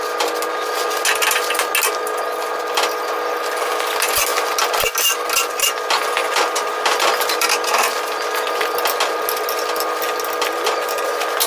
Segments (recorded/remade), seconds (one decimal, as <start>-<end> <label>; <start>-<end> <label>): 0.0-6.2 recorded; 6.2-8.5 remade; 8.5-11.5 recorded